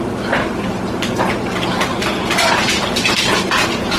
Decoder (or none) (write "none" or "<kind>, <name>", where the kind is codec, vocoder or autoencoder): none